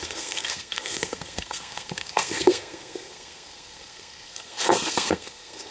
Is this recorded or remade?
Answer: remade